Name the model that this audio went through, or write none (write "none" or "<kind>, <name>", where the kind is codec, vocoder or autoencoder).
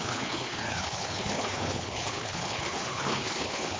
codec, HILCodec